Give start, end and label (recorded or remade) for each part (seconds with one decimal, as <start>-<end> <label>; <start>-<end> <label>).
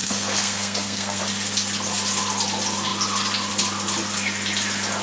0.0-1.2 remade; 1.2-5.0 recorded